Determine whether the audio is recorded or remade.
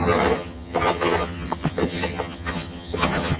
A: remade